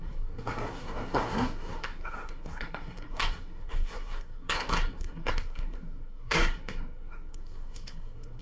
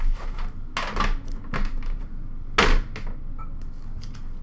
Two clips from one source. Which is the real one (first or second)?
second